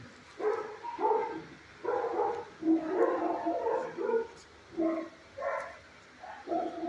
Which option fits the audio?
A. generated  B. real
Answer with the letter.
B